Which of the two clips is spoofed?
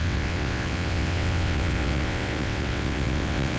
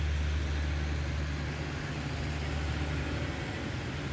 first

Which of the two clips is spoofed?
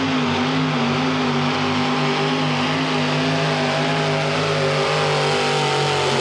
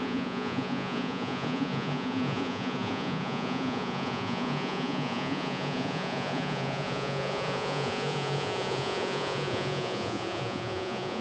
second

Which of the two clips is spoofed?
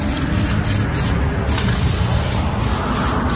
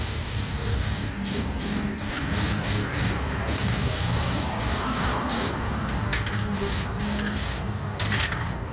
second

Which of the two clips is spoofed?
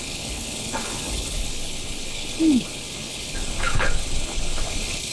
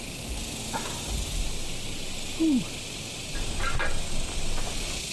first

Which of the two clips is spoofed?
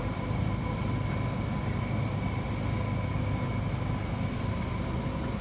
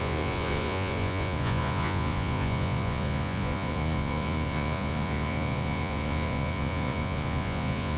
second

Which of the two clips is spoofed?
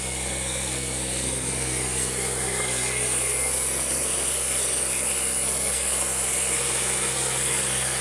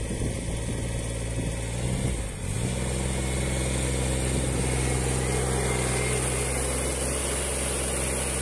first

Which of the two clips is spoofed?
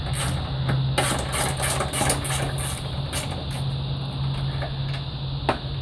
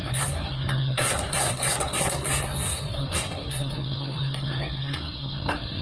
second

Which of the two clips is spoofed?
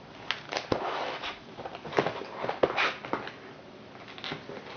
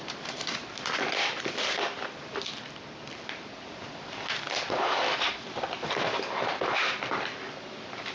second